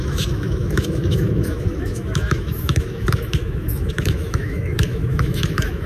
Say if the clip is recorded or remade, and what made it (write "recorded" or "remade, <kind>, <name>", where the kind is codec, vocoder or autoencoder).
remade, autoencoder, DAC-VAE